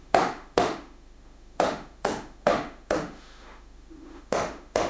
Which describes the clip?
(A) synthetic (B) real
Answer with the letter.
A